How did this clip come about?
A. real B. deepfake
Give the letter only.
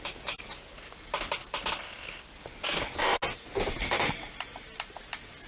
A